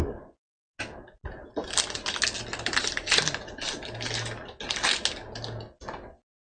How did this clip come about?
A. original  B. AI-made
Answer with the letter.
A